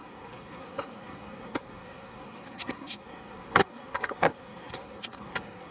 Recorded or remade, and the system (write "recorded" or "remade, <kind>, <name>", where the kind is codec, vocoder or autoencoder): remade, codec, SNAC